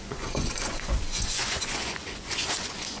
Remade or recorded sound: remade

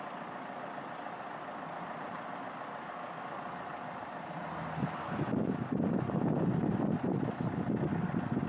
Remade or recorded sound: recorded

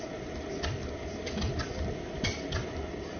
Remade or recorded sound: recorded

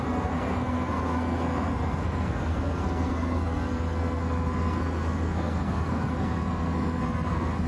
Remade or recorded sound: remade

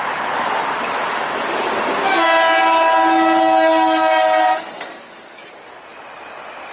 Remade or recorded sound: recorded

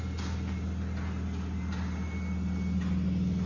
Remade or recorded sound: recorded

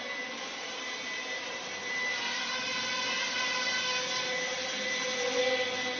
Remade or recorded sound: recorded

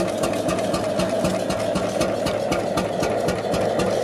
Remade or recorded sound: recorded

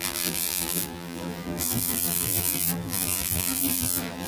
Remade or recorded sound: remade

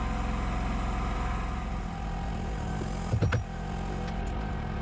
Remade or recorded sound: recorded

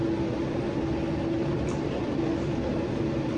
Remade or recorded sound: recorded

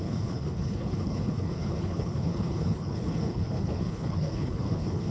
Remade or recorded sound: remade